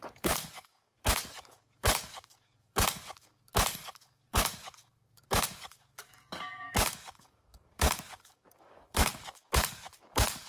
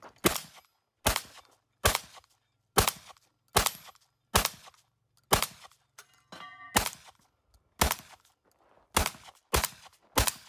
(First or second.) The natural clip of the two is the second